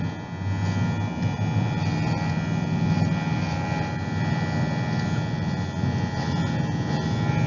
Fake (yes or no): no